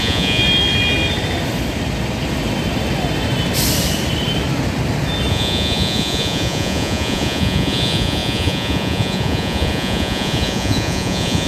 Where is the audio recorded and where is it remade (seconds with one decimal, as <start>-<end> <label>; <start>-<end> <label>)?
0.0-0.4 remade; 0.4-5.3 recorded; 5.3-11.5 remade